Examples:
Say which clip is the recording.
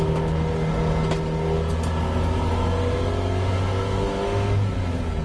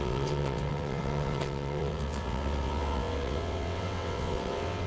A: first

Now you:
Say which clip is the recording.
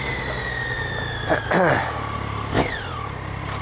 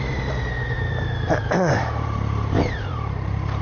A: first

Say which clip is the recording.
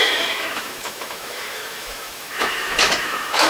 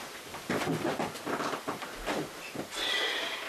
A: second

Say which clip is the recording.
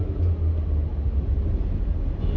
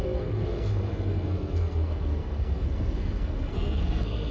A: first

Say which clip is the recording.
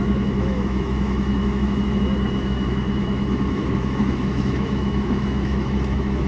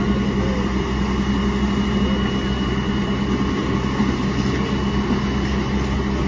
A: second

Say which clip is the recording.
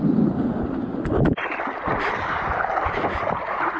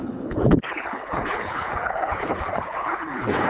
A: first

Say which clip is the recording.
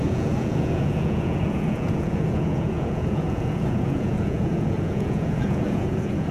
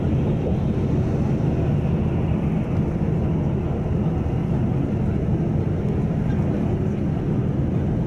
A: second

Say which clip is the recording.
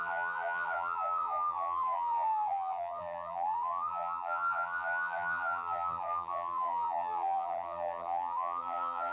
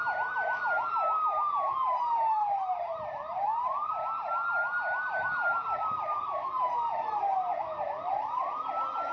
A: second